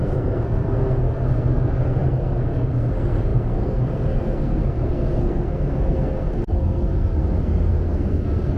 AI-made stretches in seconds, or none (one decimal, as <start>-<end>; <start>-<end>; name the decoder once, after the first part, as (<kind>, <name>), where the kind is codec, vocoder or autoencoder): 0.0-8.6 (codec, SNAC)